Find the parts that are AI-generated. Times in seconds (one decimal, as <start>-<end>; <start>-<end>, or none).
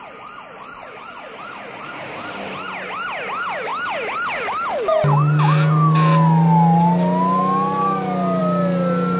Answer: none